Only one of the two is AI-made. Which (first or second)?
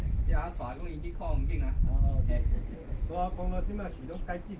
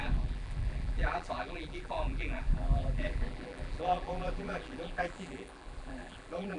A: second